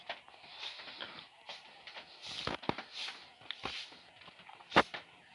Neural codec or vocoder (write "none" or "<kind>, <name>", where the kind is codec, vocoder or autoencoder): none